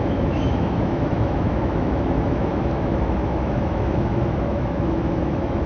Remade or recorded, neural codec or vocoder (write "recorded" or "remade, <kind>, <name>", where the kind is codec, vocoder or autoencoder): remade, autoencoder, DAC-VAE